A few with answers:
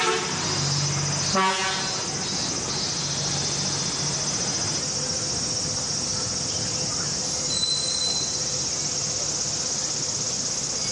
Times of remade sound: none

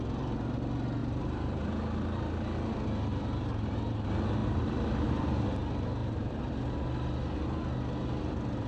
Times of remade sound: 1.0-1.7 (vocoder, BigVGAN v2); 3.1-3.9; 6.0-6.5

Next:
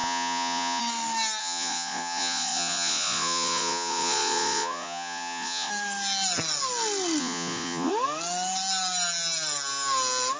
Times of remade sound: 0.0-0.8 (vocoder, Vocos); 1.4-5.7; 7.2-7.9